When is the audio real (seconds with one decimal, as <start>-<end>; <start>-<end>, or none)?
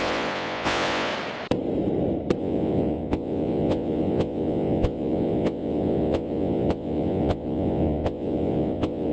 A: 1.1-2.4